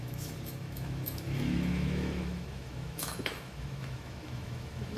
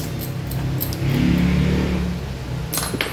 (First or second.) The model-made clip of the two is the first